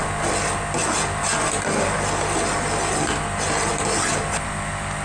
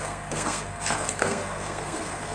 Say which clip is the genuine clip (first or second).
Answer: first